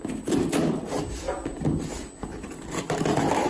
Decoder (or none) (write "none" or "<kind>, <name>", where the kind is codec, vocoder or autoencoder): none